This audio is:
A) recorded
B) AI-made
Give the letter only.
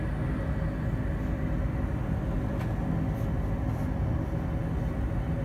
A